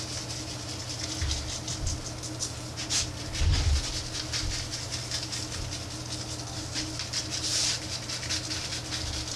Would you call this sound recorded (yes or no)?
yes